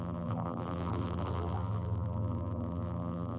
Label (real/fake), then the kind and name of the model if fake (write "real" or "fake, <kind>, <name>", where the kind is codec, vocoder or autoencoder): fake, vocoder, BigVGAN v2